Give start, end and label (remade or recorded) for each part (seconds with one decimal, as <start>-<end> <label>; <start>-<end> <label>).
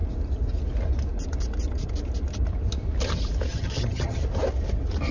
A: 0.0-3.5 recorded; 3.5-4.2 remade; 4.2-5.1 recorded